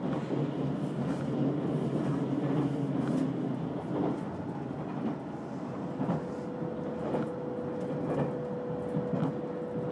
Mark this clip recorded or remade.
recorded